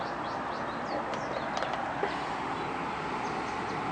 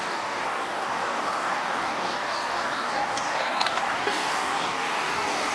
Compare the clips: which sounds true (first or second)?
first